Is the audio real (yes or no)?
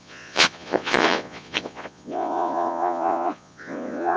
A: no